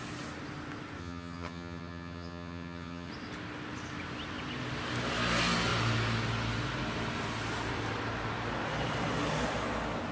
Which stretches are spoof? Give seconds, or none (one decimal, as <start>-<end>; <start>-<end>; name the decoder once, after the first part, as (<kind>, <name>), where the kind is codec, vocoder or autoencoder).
1.0-3.1 (vocoder, HiFi-GAN)